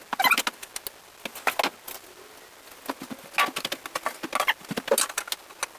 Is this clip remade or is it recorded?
recorded